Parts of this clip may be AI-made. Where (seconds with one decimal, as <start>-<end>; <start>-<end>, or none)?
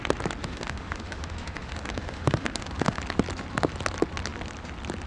0.4-3.0